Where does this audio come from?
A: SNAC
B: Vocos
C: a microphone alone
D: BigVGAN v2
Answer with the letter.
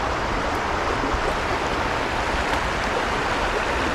C